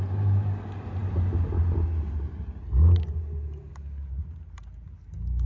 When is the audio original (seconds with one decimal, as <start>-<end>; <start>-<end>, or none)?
0.0-5.5